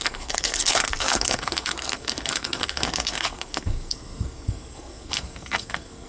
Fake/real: fake